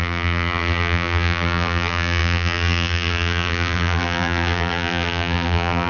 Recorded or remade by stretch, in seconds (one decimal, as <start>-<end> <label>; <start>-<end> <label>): 0.0-5.9 remade